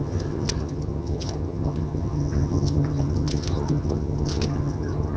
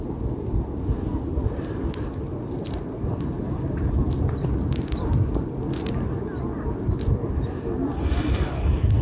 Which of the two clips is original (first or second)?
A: second